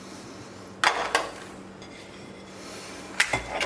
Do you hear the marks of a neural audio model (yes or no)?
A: no